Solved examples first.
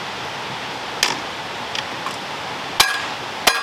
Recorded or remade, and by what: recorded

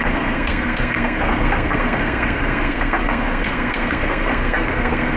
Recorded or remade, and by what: remade, codec, SNAC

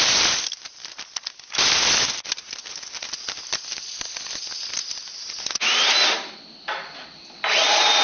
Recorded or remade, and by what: recorded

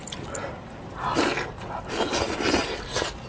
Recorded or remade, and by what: recorded